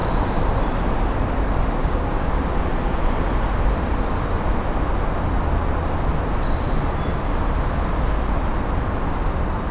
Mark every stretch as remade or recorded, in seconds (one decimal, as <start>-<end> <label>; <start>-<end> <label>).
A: 0.0-1.8 recorded; 1.8-2.4 remade; 2.4-9.7 recorded